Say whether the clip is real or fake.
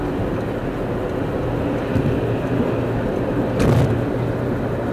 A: real